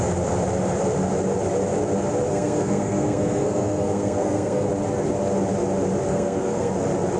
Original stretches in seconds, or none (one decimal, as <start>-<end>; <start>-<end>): 0.0-2.3; 4.7-6.1; 6.7-7.2